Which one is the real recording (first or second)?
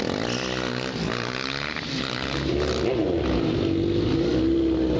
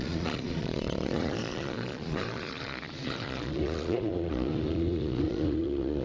first